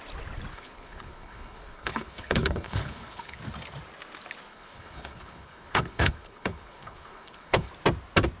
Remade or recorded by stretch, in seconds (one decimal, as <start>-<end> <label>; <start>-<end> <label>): 0.0-0.5 recorded; 0.5-3.4 remade; 3.4-4.5 recorded; 4.5-7.7 remade; 7.7-8.4 recorded